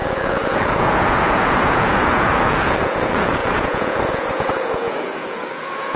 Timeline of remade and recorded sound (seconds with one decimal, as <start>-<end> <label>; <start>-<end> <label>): 0.0-6.0 remade